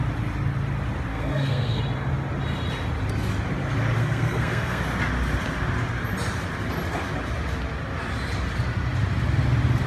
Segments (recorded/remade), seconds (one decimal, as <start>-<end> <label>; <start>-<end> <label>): 0.0-1.1 recorded; 1.1-1.8 remade; 1.8-4.0 recorded; 4.0-4.8 remade; 4.8-9.9 recorded